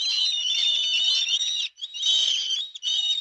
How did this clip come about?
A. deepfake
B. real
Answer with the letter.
A